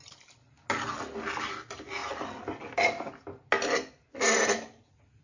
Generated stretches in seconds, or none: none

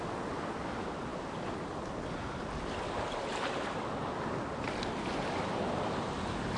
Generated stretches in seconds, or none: none

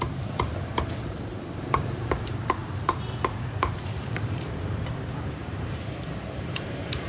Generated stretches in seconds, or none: 0.0-7.1 (vocoder, BigVGAN v2)

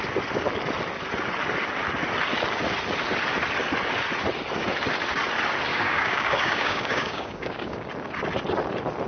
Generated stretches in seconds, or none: 5.7-7.9 (codec, DAC)

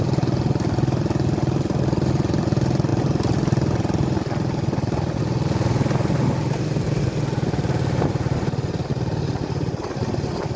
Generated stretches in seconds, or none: none

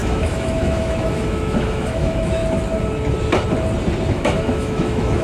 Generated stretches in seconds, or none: 0.0-2.4 (autoencoder, DAC-VAE); 4.1-5.2